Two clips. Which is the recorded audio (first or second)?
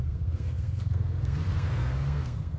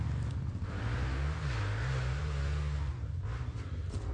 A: second